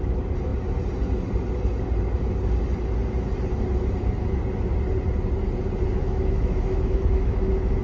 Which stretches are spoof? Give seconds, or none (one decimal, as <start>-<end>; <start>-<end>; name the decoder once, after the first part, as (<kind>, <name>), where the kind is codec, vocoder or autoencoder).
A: 6.0-7.8 (autoencoder, DAC-VAE)